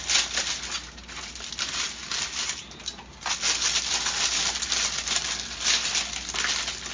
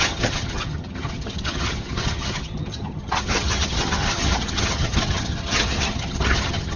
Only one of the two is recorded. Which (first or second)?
first